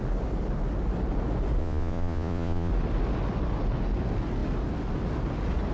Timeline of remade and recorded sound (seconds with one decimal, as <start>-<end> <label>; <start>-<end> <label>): 0.0-1.6 recorded; 1.6-2.7 remade; 2.7-5.7 recorded